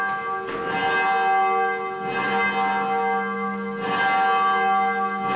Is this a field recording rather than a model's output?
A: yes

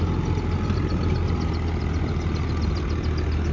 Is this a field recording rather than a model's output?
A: yes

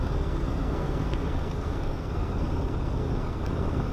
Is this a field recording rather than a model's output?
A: no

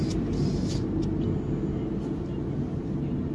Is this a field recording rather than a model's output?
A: yes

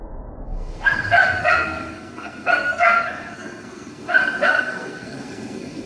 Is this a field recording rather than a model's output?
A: no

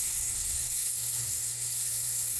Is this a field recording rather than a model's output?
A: no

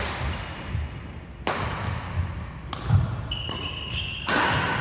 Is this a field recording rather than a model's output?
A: yes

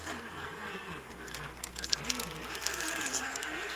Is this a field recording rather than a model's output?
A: no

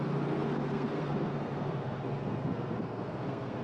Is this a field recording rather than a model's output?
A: no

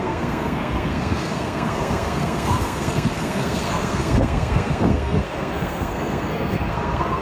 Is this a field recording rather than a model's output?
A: no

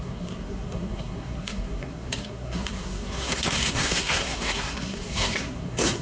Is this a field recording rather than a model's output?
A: no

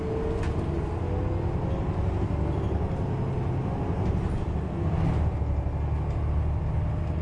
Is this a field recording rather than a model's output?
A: yes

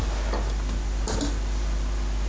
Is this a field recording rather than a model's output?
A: yes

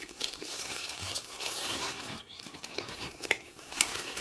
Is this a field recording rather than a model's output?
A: no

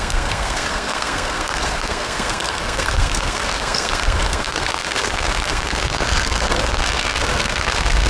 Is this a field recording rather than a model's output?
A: no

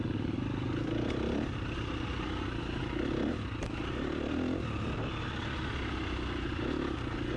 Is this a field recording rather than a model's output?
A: yes